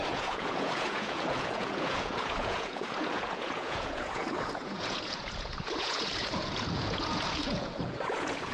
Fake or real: fake